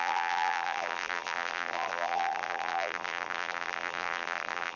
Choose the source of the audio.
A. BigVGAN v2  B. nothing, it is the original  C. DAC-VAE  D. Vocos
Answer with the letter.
A